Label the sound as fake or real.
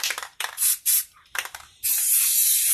fake